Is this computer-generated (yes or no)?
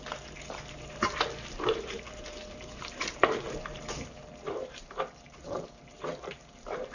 yes